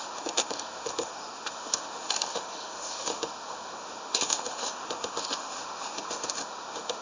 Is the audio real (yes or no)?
no